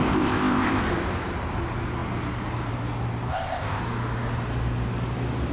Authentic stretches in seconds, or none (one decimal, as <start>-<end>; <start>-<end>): 0.8-3.3; 3.8-5.5